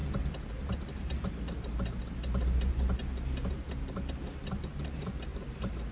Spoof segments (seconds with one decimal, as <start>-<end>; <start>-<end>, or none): 5.3-5.9